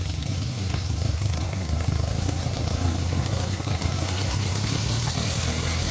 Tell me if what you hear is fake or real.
fake